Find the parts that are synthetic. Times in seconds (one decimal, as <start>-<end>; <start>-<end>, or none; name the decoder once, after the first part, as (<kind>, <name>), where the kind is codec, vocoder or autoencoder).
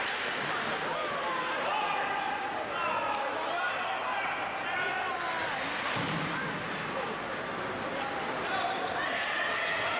none